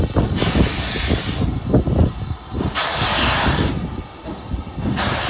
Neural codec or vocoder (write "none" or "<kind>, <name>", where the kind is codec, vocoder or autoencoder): none